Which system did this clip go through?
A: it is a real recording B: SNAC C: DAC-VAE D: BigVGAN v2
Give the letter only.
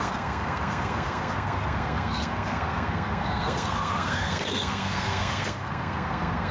B